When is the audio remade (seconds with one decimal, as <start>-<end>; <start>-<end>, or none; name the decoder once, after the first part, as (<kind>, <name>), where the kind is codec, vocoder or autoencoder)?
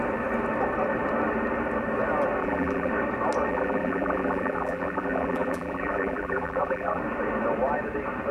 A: 2.4-2.9 (vocoder, BigVGAN v2); 3.5-7.0